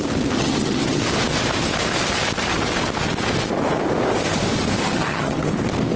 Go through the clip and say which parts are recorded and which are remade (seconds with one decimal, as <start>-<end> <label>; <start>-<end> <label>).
0.0-0.4 recorded; 0.4-1.0 remade; 1.0-4.8 recorded; 4.8-5.5 remade; 5.5-6.0 recorded